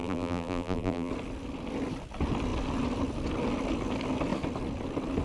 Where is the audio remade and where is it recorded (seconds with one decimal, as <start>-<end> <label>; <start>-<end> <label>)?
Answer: 0.0-1.1 remade; 1.1-5.2 recorded